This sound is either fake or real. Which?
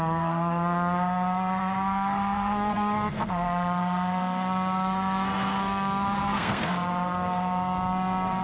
fake